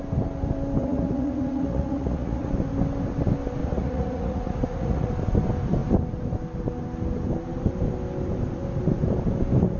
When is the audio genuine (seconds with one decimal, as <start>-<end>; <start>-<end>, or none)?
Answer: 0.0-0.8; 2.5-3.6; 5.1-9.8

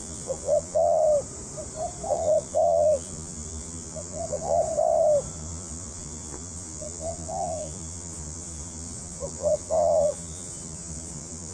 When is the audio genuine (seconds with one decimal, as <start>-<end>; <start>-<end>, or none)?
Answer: 1.0-2.1; 4.6-5.3

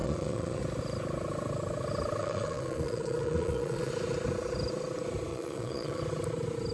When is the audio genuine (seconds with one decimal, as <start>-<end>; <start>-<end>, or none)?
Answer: 0.6-2.2; 3.9-5.3; 6.0-6.7